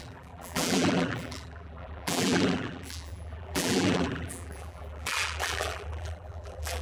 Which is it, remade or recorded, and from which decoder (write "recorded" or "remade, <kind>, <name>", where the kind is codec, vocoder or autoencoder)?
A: remade, vocoder, BigVGAN v2